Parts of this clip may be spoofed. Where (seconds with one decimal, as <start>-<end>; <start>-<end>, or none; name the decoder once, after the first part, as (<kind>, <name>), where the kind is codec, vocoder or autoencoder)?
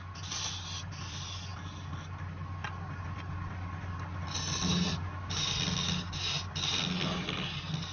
none